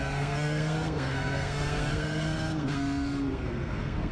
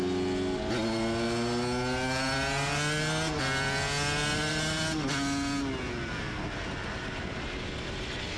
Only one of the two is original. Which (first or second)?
second